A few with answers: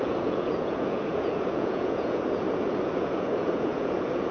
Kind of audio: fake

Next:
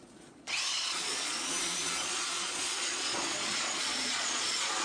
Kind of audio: fake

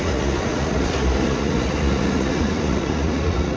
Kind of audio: fake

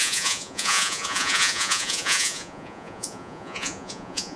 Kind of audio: fake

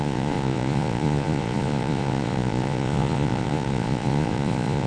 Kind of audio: fake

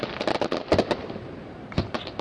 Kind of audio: real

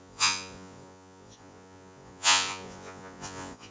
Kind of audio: fake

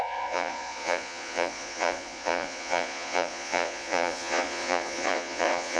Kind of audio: fake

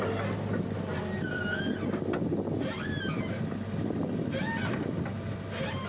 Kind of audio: real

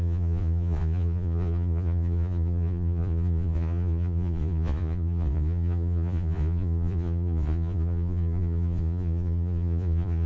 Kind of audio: fake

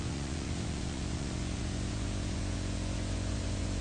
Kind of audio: fake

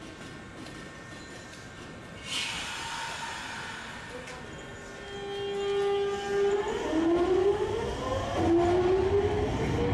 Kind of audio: real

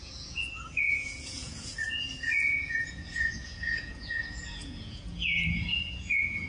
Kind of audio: fake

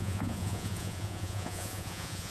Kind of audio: fake